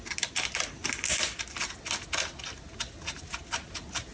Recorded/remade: recorded